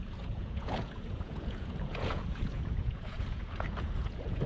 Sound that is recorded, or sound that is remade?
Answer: remade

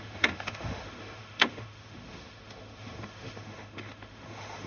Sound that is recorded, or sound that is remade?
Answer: remade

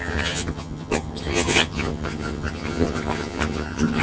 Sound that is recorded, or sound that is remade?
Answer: remade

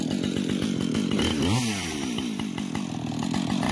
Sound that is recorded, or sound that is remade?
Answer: recorded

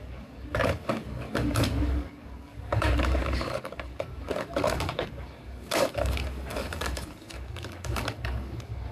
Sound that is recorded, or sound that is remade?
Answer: remade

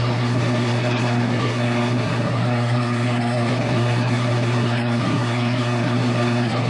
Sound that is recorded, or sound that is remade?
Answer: remade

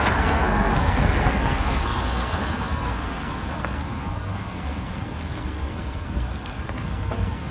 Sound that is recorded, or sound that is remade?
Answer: remade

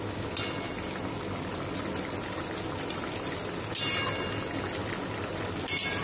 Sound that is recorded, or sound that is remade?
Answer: recorded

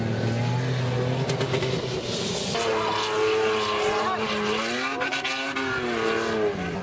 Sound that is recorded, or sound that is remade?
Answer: recorded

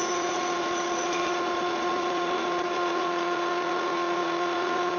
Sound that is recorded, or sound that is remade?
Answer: remade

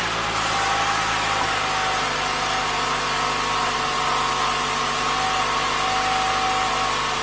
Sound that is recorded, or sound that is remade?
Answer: recorded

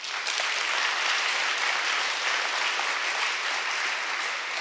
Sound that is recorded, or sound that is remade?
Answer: recorded